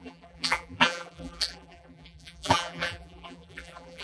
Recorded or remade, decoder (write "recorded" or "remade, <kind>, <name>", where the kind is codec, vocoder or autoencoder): remade, vocoder, BigVGAN v2